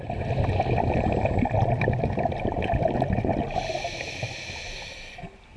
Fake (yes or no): no